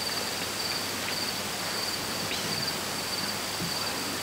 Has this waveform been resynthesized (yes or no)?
no